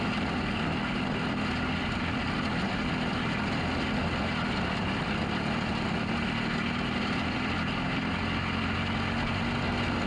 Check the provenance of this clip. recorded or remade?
recorded